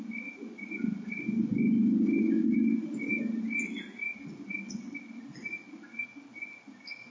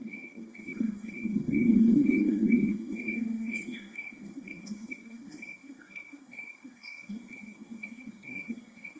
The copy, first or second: second